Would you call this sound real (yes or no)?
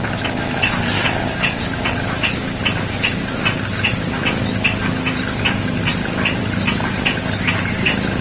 yes